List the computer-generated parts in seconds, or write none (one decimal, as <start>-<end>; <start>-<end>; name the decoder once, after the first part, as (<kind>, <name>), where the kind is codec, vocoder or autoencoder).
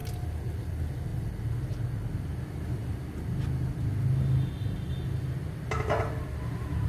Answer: none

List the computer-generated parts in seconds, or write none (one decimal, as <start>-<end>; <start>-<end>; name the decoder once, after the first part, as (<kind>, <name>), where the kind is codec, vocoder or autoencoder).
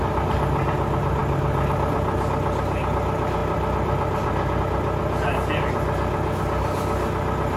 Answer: 3.4-4.6 (vocoder, BigVGAN v2)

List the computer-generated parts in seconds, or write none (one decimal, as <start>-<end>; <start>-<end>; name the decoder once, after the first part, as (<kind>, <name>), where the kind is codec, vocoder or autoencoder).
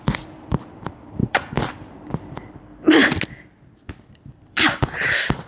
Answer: 0.0-3.0 (vocoder, BigVGAN v2); 3.9-5.5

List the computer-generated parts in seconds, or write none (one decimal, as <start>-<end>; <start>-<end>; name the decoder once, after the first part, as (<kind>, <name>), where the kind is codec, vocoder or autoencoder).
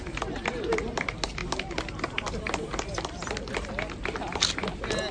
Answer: none